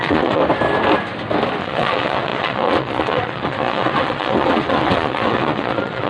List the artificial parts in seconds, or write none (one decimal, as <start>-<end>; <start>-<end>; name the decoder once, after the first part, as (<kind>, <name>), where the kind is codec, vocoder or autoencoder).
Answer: 0.0-0.4 (vocoder, Vocos); 1.6-6.1